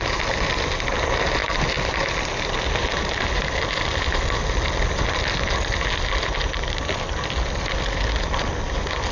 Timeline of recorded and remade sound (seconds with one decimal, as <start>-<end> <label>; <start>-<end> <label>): 0.0-9.1 recorded